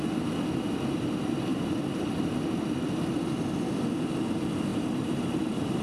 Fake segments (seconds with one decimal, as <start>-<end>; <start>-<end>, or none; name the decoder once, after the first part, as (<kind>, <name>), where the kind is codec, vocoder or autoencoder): 4.7-5.8 (vocoder, BigVGAN v2)